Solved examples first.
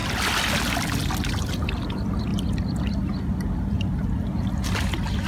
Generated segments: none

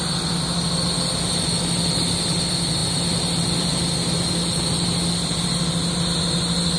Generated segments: none

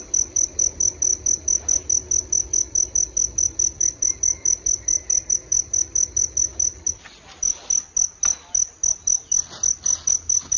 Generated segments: none

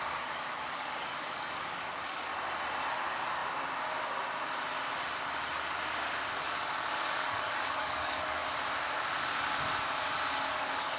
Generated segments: 0.0-2.3 (codec, DAC); 2.9-3.4; 7.2-8.4; 10.5-11.0

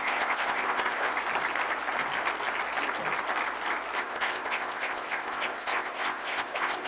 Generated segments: 0.0-1.1 (codec, ZipCodec); 4.0-6.9